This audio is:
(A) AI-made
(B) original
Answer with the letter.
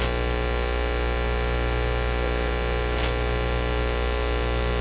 B